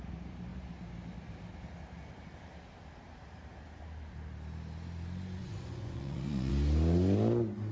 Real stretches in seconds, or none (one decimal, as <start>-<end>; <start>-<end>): 0.0-5.4; 6.5-7.7